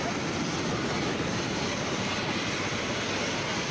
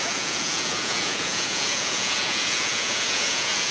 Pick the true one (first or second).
first